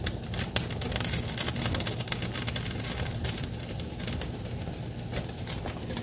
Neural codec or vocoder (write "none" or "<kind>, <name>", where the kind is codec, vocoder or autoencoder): none